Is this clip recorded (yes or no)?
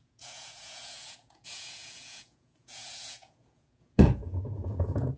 no